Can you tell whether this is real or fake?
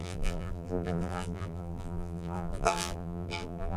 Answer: fake